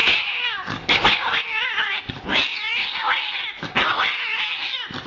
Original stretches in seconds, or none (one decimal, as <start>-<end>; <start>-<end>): 1.4-5.1